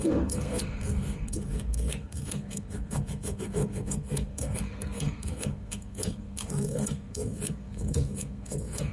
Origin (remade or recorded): remade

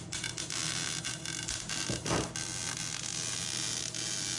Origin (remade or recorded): recorded